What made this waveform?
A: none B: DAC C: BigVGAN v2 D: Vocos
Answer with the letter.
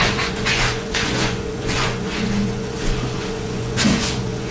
D